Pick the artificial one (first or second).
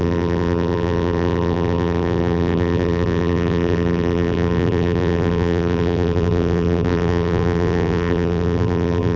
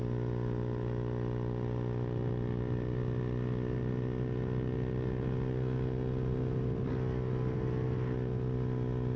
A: first